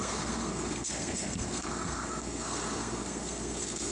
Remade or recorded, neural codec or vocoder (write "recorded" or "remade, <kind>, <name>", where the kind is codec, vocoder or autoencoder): remade, codec, SNAC